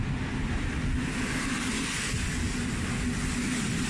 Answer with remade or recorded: recorded